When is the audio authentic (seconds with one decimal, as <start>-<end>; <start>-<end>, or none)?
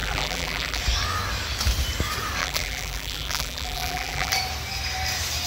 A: 0.8-2.4; 4.3-5.5